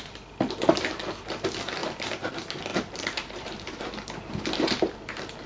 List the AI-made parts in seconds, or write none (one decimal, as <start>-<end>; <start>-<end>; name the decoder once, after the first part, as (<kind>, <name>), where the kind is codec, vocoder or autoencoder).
1.8-2.3 (vocoder, BigVGAN v2); 2.7-3.8